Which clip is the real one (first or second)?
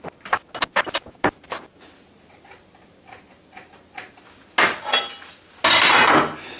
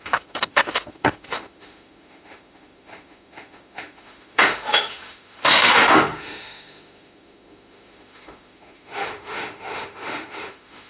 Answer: first